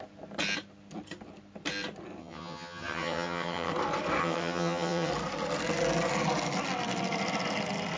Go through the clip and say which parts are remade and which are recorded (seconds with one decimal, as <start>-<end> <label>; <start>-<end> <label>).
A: 0.0-2.2 recorded; 2.2-3.7 remade; 3.7-4.2 recorded; 4.2-5.1 remade; 5.1-8.0 recorded